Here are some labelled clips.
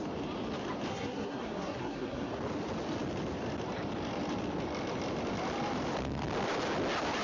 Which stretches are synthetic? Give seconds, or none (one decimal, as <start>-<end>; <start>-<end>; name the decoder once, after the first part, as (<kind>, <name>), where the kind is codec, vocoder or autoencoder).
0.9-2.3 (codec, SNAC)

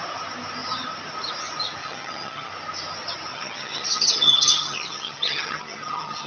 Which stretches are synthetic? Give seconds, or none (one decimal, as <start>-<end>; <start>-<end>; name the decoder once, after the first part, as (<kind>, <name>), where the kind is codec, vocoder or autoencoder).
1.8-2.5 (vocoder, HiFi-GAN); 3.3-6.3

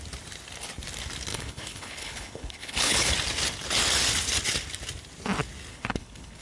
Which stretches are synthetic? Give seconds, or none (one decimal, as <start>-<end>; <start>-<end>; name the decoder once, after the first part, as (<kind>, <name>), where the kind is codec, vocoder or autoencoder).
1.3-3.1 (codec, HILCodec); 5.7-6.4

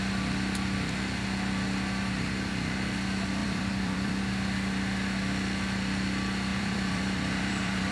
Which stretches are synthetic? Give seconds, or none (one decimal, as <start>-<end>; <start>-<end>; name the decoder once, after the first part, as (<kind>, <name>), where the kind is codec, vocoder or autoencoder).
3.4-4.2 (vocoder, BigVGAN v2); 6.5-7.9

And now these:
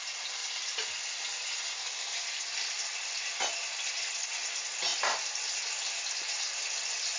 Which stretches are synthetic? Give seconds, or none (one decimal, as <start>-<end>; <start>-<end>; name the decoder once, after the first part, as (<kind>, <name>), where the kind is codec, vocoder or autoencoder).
0.4-4.0 (vocoder, BigVGAN v2); 4.9-6.5